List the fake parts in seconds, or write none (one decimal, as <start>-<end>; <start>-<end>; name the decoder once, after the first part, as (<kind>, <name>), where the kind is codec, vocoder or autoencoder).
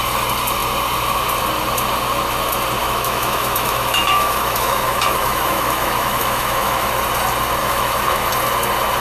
2.8-6.9 (autoencoder, DAC-VAE); 7.6-8.3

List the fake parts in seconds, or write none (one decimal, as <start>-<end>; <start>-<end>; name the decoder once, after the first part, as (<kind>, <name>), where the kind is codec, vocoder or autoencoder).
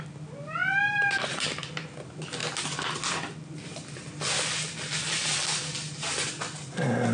none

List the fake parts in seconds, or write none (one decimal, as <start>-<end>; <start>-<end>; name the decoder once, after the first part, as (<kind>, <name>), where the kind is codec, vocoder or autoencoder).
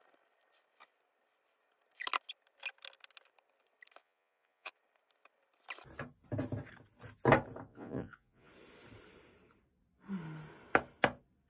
4.0-4.7 (vocoder, Vocos); 7.7-8.5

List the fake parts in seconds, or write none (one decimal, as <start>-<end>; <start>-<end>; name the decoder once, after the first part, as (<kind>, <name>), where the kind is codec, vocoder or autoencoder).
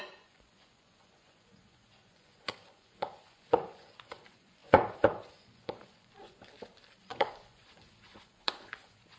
0.0-6.4 (vocoder, Vocos); 7.0-9.2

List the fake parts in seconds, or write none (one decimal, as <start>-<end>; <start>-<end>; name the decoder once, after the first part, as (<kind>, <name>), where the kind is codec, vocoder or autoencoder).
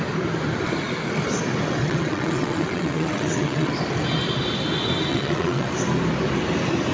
1.8-3.7 (vocoder, WaveNeXt); 5.1-5.7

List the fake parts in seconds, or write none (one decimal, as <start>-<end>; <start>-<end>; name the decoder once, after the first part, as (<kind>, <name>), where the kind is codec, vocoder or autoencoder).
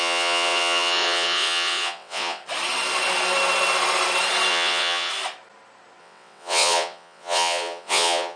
0.0-2.4 (vocoder, WaveNeXt); 4.5-5.1; 6.0-8.4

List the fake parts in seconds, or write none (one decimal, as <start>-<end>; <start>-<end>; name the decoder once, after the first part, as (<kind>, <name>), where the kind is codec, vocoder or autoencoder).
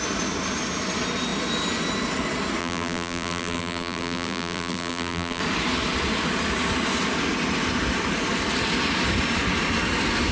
2.6-5.4 (vocoder, BigVGAN v2)